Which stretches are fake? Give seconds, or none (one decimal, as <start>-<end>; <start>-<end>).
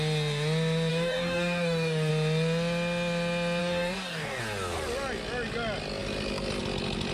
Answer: 0.9-2.1; 3.6-4.4